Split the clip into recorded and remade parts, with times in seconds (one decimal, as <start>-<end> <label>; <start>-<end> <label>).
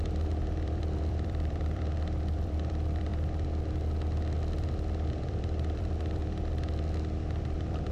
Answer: 0.0-3.1 remade; 3.1-5.1 recorded; 5.1-6.2 remade; 6.2-7.4 recorded; 7.4-7.9 remade